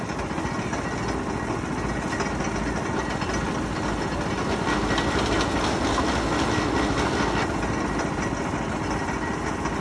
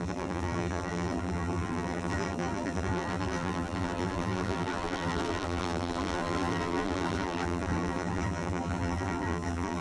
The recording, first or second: first